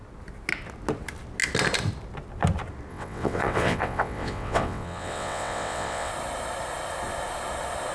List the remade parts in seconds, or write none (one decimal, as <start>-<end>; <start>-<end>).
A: 2.9-6.1